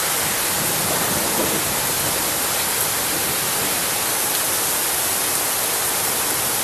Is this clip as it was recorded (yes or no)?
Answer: yes